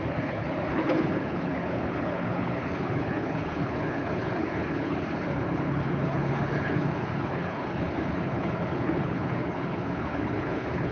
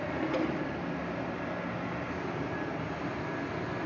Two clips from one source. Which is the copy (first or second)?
first